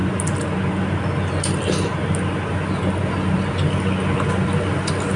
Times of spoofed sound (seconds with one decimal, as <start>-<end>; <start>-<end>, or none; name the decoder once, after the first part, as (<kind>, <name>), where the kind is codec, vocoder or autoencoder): none